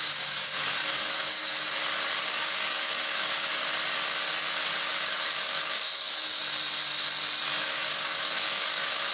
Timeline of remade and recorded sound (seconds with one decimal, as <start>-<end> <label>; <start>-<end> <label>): 0.0-1.5 remade; 1.5-2.2 recorded; 2.2-3.5 remade; 3.5-4.9 recorded; 4.9-6.4 remade; 6.4-7.6 recorded; 7.6-9.1 remade